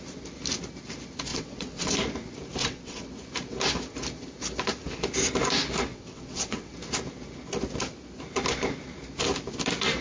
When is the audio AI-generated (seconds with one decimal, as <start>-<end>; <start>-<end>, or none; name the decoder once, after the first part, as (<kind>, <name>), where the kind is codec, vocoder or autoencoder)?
1.3-1.9 (vocoder, WaveNeXt); 2.6-3.1; 5.9-6.7